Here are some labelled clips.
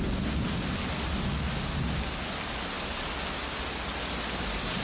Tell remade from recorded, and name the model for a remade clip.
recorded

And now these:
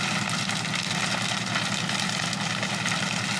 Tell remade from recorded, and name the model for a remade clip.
recorded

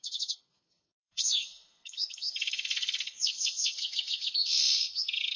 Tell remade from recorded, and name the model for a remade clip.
remade, codec, SNAC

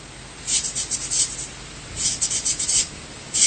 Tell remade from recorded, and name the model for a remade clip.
recorded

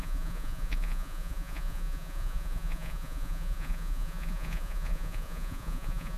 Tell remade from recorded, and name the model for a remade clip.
remade, vocoder, Vocos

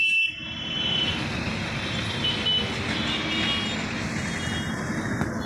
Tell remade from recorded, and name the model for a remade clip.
recorded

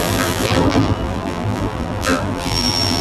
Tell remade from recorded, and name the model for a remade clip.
remade, vocoder, BigVGAN v2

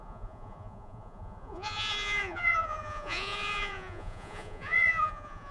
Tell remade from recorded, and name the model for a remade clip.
remade, vocoder, Vocos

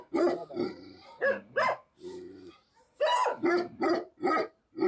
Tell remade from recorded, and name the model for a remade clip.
remade, vocoder, BigVGAN v2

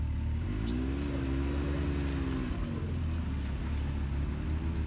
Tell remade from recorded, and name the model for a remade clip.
recorded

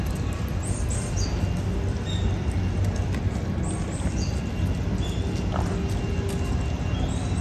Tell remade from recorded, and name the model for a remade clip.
recorded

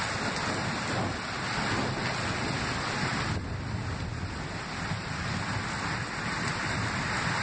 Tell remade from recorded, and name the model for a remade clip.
recorded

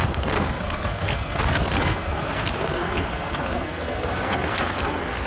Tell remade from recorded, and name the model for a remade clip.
remade, codec, SNAC